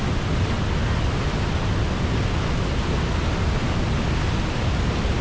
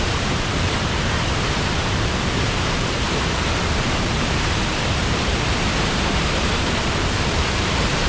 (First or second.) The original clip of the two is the first